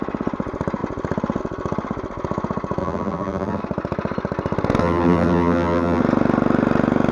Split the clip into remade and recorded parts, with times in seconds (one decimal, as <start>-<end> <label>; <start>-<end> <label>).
0.0-2.8 recorded; 2.8-3.6 remade; 3.6-4.8 recorded; 4.8-6.0 remade; 6.0-7.1 recorded